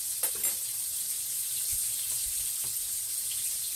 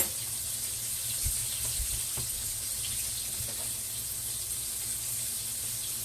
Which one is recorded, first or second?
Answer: second